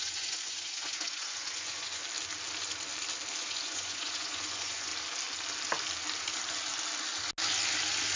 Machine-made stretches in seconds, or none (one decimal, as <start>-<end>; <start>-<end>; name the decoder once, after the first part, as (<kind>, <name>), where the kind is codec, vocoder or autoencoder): 0.0-2.0 (vocoder, Vocos); 3.4-4.9